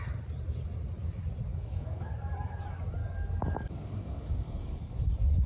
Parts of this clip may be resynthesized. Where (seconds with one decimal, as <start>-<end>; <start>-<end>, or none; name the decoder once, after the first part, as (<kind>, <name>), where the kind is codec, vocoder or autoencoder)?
1.5-2.1 (codec, DAC); 3.0-5.0